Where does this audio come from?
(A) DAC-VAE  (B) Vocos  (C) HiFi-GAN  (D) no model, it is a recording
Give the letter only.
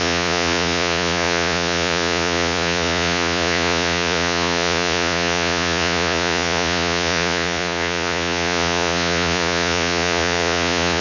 B